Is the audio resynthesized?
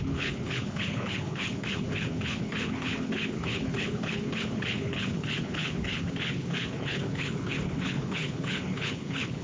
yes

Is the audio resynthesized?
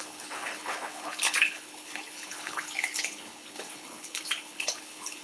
yes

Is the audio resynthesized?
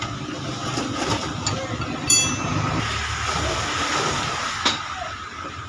no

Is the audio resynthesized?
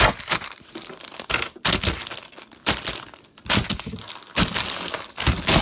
no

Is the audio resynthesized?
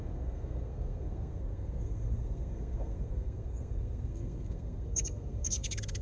yes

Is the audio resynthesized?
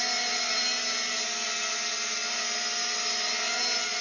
no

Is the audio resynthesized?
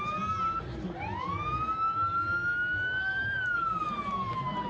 no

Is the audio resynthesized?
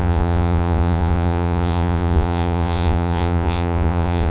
yes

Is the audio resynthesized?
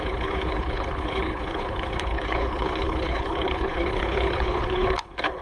yes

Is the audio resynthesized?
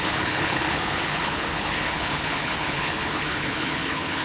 yes